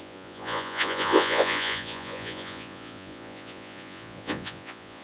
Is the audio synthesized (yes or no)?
yes